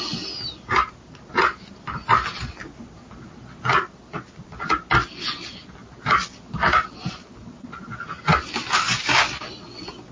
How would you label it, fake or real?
real